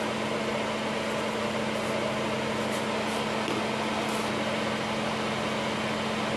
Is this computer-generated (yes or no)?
no